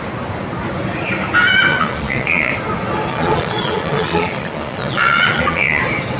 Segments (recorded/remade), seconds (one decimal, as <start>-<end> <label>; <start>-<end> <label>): 0.0-1.7 recorded; 1.7-2.5 remade; 2.5-3.1 recorded; 3.1-5.8 remade; 5.8-6.2 recorded